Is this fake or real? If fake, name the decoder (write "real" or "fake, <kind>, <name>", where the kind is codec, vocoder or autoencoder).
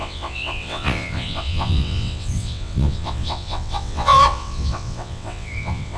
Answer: fake, vocoder, WaveNeXt